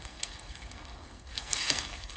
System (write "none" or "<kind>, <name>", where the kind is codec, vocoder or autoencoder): codec, SNAC